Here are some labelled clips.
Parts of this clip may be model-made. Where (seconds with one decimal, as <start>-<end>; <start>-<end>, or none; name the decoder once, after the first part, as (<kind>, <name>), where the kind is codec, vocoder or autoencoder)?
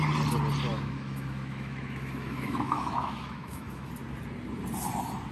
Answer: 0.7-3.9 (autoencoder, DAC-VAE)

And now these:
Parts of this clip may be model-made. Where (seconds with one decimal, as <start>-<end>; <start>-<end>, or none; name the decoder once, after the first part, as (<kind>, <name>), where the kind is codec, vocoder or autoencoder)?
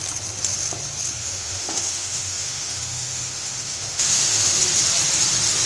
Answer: 1.2-4.6 (autoencoder, DAC-VAE)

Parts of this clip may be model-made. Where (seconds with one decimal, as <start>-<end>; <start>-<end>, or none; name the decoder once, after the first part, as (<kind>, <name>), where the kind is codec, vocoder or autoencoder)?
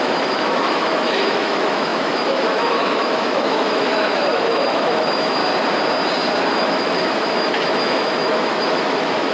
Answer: 0.0-5.4 (autoencoder, DAC-VAE); 6.5-9.3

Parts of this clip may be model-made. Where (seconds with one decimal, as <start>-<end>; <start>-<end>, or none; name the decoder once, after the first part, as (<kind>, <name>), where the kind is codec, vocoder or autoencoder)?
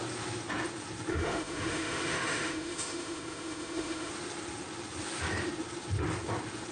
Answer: 1.1-4.1 (autoencoder, DAC-VAE)